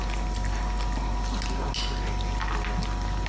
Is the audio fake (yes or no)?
no